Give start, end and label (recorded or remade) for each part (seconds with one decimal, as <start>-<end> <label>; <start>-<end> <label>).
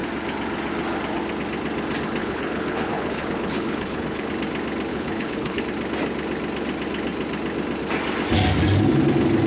0.0-2.2 recorded; 2.2-4.3 remade; 4.3-4.9 recorded; 4.9-5.6 remade; 5.6-9.5 recorded